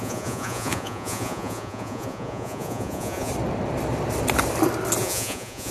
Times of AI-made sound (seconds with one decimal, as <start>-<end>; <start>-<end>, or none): 0.0-3.3; 5.0-5.7